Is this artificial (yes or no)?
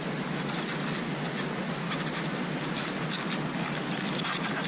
no